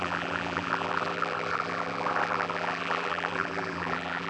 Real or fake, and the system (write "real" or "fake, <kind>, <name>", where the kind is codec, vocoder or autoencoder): fake, vocoder, BigVGAN v2